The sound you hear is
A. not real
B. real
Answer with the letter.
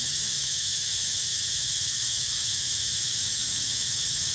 A